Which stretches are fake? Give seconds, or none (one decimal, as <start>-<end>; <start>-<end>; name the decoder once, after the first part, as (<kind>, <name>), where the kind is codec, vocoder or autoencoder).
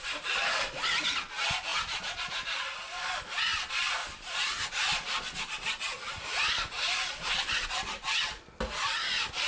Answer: none